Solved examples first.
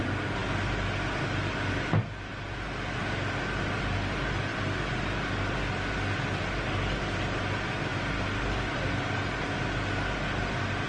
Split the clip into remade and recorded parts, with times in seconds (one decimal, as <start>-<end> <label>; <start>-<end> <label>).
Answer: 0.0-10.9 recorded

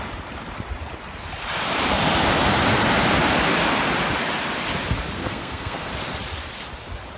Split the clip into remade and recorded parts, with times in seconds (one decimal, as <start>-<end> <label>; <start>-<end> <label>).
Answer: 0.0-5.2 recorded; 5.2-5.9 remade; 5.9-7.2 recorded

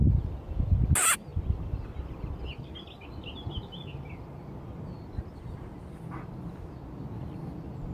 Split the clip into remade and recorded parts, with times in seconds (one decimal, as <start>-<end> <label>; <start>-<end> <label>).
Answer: 0.0-7.9 recorded